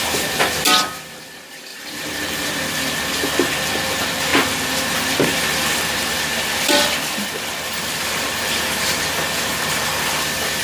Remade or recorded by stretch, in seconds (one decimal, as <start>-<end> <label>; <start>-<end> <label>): 0.0-1.7 recorded; 1.7-2.5 remade; 2.5-4.3 recorded; 4.3-9.1 remade; 9.1-10.6 recorded